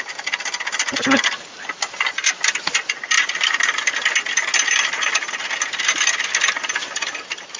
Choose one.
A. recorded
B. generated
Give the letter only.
A